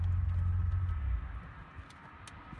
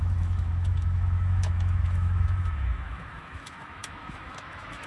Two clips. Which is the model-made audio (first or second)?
second